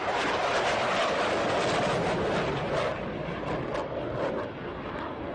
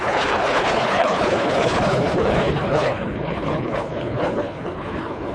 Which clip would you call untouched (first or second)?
first